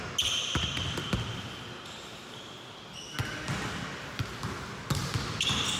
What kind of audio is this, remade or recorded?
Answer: recorded